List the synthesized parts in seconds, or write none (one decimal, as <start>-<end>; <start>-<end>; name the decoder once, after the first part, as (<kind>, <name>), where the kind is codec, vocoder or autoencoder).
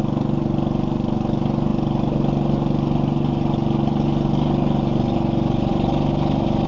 none